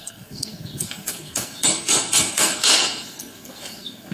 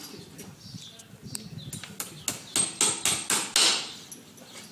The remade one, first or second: first